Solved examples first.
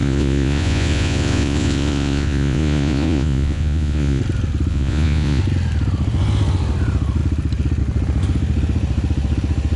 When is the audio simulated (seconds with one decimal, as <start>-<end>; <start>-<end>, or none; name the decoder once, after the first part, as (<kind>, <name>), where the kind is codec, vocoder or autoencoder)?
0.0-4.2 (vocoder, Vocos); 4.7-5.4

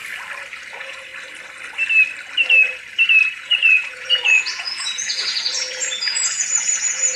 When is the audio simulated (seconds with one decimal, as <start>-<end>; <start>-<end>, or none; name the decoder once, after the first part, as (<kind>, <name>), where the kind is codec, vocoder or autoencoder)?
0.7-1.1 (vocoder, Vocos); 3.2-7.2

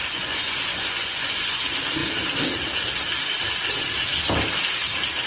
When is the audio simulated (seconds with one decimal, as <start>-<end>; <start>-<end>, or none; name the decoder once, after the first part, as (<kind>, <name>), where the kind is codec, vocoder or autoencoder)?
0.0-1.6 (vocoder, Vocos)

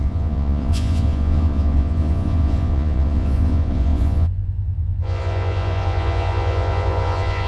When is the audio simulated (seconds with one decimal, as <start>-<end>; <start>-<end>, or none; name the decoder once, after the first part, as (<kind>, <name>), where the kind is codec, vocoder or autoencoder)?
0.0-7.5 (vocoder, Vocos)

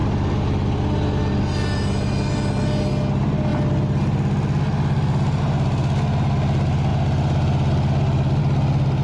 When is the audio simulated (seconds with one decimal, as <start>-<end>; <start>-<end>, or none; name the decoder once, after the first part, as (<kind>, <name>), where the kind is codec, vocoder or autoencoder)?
none